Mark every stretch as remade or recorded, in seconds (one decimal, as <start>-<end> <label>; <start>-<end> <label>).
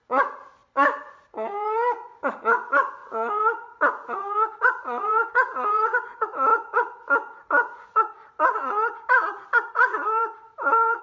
0.0-0.6 remade; 0.6-1.1 recorded; 1.1-11.0 remade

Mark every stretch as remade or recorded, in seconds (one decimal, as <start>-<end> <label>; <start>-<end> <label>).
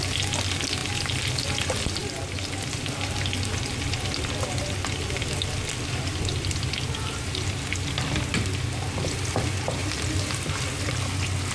0.0-11.5 recorded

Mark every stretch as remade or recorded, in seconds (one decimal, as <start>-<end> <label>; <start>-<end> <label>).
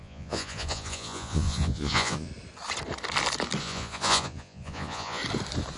0.0-2.3 remade; 2.3-3.6 recorded; 3.6-5.2 remade; 5.2-5.8 recorded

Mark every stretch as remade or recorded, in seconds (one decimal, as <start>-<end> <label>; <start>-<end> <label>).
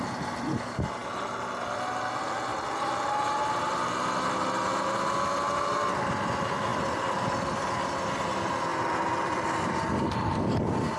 0.0-11.0 recorded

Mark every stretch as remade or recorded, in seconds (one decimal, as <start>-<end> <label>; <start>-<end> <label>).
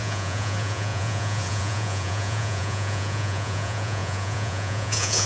0.0-5.3 remade